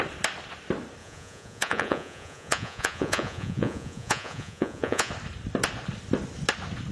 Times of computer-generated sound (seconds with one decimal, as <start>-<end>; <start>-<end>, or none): 1.0-5.1